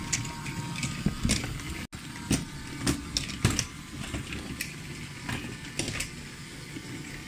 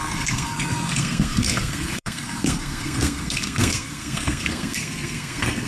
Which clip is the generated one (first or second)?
second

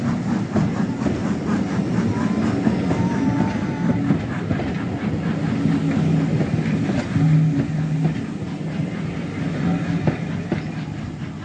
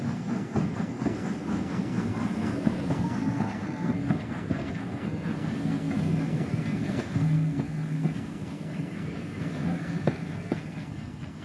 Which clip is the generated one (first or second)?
second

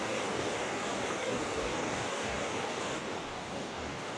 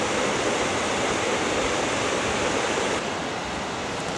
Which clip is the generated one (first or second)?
first